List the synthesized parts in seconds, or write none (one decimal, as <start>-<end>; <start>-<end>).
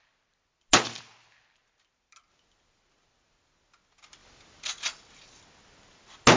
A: 4.2-4.7